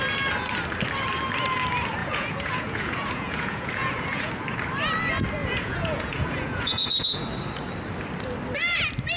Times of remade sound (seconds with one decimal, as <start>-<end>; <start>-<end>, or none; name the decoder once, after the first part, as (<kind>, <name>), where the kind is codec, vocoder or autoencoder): 2.0-4.3 (vocoder, Vocos); 5.4-7.2